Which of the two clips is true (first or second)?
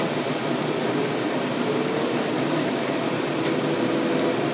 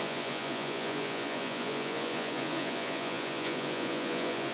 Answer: first